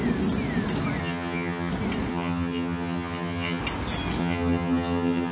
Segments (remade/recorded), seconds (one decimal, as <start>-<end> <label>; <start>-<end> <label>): 0.0-1.0 recorded; 1.0-1.7 remade; 1.7-2.1 recorded; 2.1-3.6 remade; 3.6-4.2 recorded; 4.2-5.3 remade